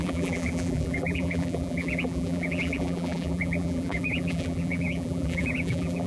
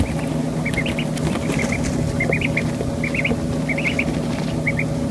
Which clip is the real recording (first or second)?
second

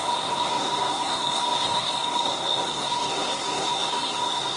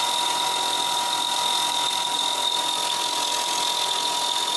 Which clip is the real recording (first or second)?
second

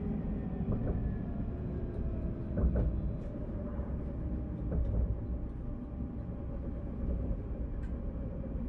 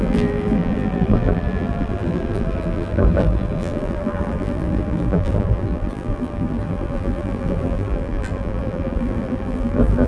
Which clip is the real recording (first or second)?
first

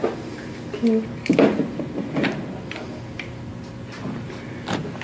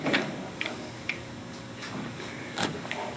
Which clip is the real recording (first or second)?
first